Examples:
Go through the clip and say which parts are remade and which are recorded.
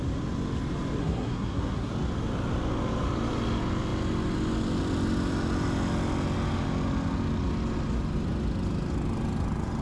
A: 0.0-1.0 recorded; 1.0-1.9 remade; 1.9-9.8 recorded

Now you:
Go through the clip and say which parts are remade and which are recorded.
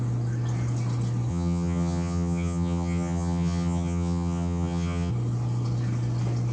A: 0.0-1.3 recorded; 1.3-5.1 remade; 5.1-6.5 recorded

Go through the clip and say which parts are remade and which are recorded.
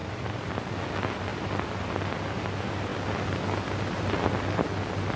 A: 0.0-0.5 remade; 0.5-2.9 recorded; 2.9-4.4 remade; 4.4-5.2 recorded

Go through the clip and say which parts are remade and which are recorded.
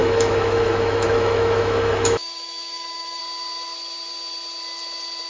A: 0.0-3.2 remade; 3.2-5.3 recorded